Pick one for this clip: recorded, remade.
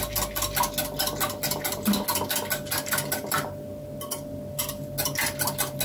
recorded